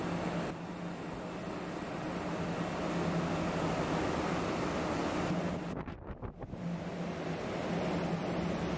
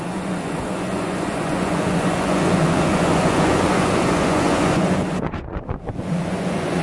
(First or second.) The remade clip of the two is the second